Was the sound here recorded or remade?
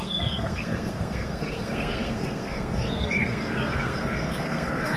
remade